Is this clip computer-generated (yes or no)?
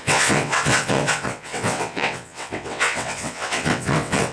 yes